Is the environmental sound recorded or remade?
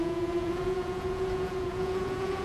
remade